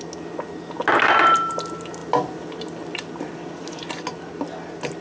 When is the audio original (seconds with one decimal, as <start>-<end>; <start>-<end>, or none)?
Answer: 0.0-5.0